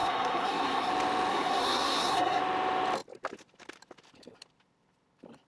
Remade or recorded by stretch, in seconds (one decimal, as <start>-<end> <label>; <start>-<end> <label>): 0.0-0.9 remade; 0.9-1.3 recorded; 1.3-2.4 remade; 2.4-5.5 recorded